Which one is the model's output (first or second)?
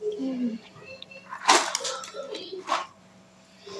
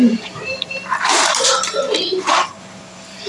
second